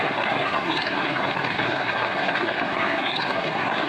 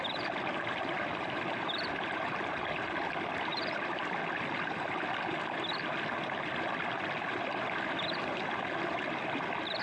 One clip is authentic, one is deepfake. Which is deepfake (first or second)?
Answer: first